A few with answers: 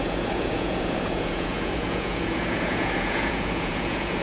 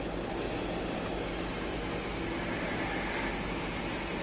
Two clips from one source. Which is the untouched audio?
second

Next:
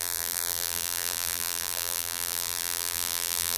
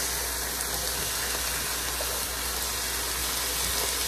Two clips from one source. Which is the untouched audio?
second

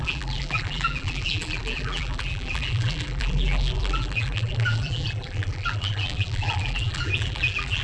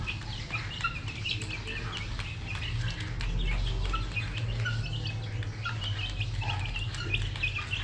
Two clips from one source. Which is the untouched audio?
second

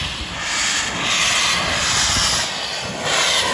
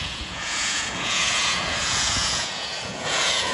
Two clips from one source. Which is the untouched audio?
first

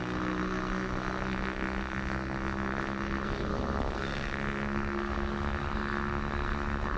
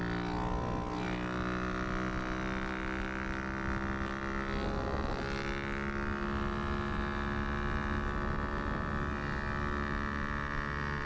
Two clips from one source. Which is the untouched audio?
second